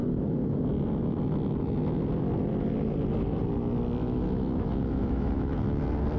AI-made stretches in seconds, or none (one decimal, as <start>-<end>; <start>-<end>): 4.0-5.6

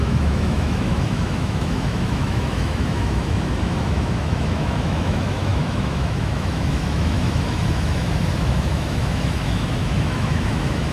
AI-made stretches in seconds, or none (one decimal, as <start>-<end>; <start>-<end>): 0.0-10.9

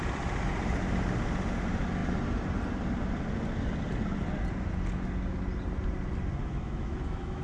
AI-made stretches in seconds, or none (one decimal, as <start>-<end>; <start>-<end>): 6.4-7.4

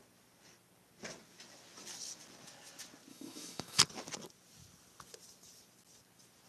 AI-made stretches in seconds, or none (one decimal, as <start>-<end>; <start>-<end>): 3.1-3.8

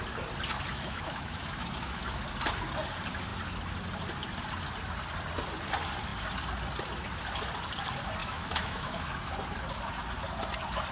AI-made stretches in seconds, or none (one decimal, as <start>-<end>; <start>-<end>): 0.7-2.2; 8.2-9.1

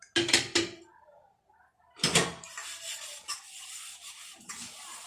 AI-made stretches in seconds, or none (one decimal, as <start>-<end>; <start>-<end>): none

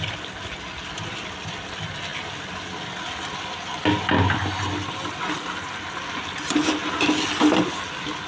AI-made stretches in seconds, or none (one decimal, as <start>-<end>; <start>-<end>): none